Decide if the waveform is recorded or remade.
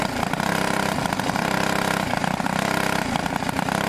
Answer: recorded